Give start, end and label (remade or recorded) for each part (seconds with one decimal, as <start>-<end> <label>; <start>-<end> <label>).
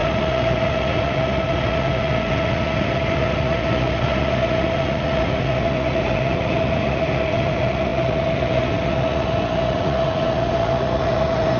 0.0-11.6 remade